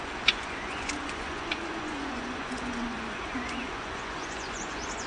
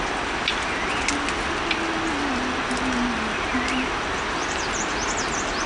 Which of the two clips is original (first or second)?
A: second